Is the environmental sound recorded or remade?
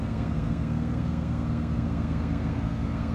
remade